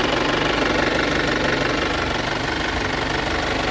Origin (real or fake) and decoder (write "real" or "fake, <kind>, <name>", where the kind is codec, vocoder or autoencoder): real